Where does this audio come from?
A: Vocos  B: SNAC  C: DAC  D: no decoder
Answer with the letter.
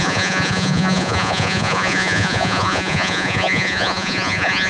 A